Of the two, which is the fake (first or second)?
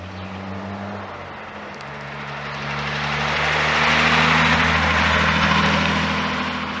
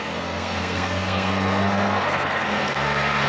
second